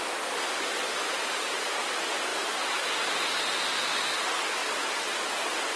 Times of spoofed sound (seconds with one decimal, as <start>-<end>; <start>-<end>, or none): none